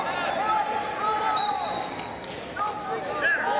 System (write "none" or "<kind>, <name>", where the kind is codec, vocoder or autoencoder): none